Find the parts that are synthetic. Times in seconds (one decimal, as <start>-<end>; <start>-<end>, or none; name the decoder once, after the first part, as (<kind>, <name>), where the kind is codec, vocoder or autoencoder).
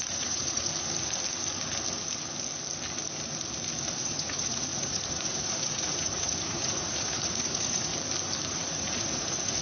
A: 0.0-0.7 (vocoder, Vocos); 3.9-7.9; 8.5-9.6